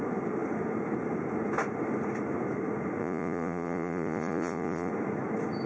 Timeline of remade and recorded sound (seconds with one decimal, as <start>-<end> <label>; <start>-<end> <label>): 0.0-3.0 recorded; 3.0-4.9 remade; 4.9-5.7 recorded